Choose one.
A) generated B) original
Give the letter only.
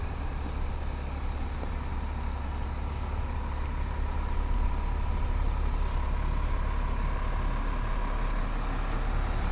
B